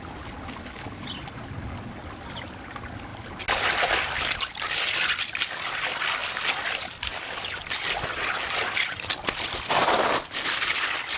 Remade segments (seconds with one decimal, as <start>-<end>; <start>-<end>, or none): 6.2-10.2